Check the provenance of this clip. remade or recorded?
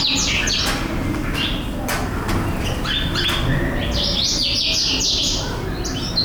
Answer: recorded